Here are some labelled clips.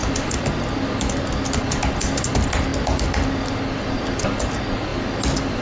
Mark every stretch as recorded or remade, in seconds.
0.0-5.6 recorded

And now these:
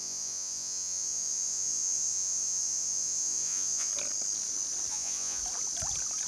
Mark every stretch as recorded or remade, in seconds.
0.0-3.9 remade; 3.9-4.9 recorded; 4.9-5.4 remade; 5.4-6.3 recorded

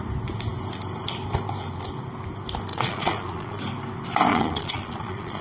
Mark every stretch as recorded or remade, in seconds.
0.0-2.7 recorded; 2.7-3.6 remade; 3.6-4.3 recorded; 4.3-5.4 remade

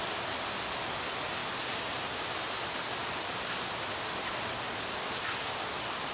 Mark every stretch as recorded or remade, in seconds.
0.0-6.1 recorded